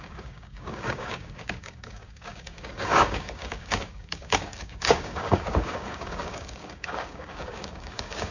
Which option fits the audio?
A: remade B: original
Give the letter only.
A